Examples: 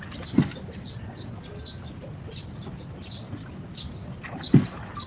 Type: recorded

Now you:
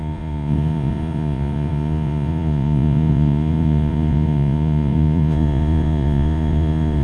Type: remade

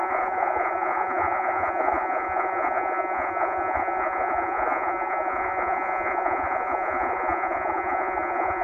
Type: remade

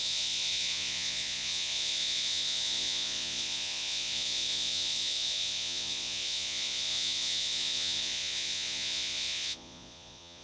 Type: remade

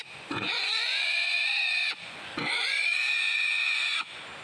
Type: remade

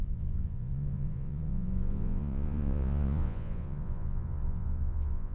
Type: remade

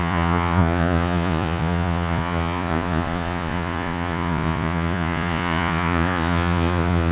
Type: remade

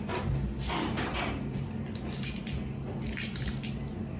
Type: recorded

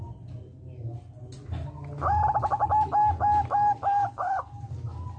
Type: recorded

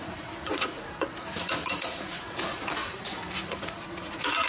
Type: remade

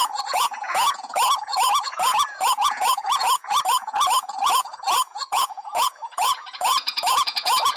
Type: remade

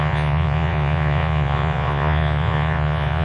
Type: remade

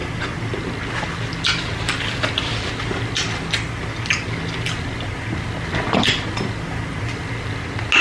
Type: recorded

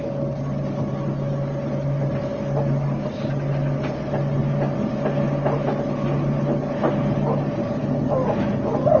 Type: recorded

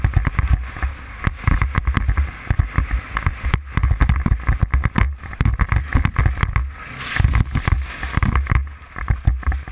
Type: recorded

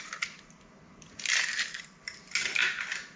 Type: recorded